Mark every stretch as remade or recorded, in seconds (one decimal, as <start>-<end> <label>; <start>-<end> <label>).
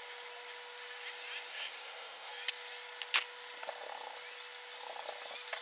0.0-1.5 recorded; 1.5-2.3 remade; 2.3-5.6 recorded